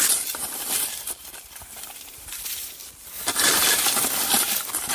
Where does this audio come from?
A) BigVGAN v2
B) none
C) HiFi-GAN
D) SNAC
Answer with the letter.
A